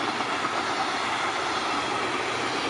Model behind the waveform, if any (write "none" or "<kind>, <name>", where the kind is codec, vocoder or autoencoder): none